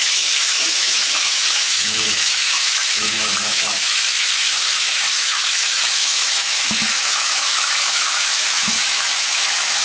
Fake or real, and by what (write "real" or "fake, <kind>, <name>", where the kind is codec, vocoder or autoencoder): fake, autoencoder, DAC-VAE